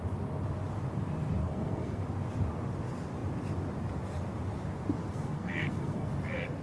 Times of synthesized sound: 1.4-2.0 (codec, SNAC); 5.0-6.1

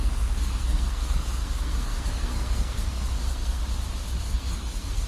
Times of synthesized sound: 0.0-3.6 (codec, SNAC); 4.2-5.1

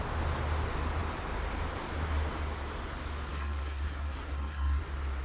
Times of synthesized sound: 3.3-4.8 (codec, SNAC)

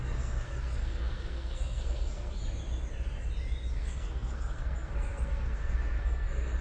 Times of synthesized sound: 0.0-2.4 (codec, SNAC); 3.7-6.6

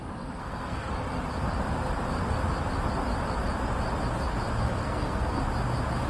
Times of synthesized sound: 0.0-0.9 (codec, SNAC); 4.8-5.4